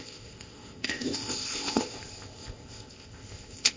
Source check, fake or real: fake